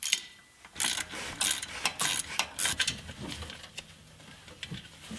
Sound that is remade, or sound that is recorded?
recorded